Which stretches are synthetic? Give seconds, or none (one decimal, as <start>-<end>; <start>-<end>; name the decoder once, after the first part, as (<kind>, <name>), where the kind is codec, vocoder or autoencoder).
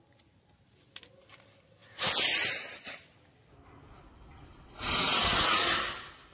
1.8-5.2 (vocoder, BigVGAN v2)